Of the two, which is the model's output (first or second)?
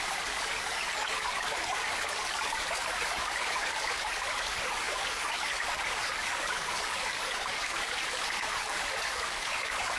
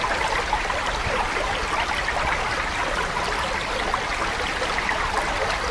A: first